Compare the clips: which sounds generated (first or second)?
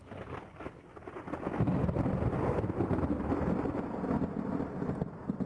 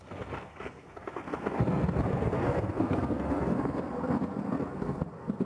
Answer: second